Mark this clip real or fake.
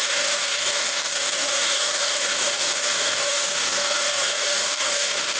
fake